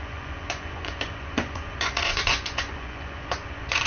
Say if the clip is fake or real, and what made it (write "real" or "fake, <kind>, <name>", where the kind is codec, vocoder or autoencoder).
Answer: fake, vocoder, Vocos